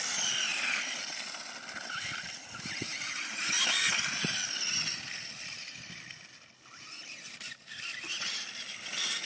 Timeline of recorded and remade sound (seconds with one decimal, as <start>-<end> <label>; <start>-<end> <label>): 0.0-9.2 recorded

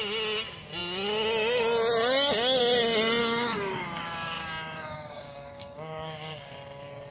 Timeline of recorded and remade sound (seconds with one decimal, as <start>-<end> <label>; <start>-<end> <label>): 0.0-3.2 recorded; 3.2-7.1 remade